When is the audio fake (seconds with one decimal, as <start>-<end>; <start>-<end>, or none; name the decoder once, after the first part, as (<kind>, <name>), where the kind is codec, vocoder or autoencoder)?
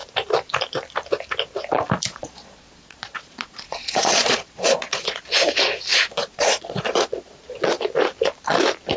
2.1-5.2 (vocoder, Vocos); 5.9-7.8